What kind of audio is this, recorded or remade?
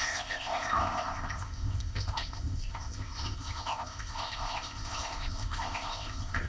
remade